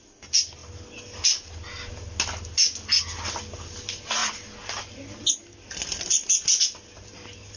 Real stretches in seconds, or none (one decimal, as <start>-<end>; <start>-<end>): 0.0-7.6